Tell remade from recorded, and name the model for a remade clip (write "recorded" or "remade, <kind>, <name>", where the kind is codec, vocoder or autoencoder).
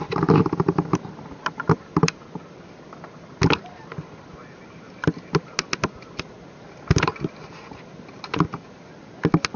recorded